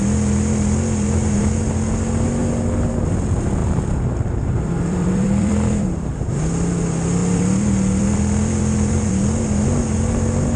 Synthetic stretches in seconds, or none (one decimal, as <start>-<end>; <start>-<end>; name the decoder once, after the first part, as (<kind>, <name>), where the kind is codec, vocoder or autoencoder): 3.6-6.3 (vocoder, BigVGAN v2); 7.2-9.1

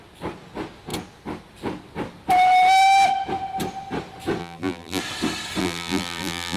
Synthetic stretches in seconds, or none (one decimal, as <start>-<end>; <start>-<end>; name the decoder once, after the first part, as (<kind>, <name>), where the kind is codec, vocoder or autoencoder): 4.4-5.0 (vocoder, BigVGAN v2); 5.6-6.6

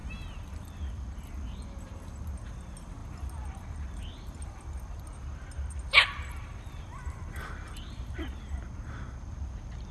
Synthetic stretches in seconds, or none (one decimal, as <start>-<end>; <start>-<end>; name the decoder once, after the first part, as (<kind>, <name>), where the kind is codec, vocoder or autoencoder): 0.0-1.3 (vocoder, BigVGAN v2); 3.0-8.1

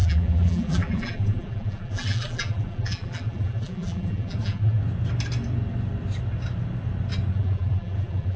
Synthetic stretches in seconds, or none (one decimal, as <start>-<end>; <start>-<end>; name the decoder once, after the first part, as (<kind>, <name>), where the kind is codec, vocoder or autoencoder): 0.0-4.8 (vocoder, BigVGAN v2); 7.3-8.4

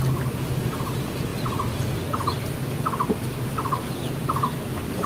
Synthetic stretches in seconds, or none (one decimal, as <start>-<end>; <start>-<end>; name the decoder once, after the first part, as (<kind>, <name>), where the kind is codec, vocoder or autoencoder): none